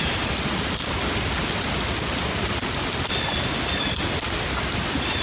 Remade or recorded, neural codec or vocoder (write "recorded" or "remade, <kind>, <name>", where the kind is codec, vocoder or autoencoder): recorded